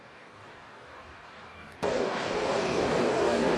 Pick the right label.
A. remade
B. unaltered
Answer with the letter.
A